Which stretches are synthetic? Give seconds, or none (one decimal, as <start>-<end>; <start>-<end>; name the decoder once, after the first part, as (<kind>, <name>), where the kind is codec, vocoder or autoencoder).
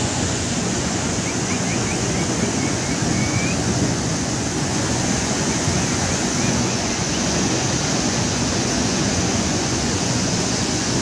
0.0-11.0 (vocoder, Vocos)